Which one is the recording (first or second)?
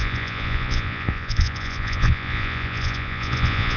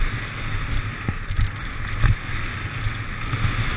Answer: second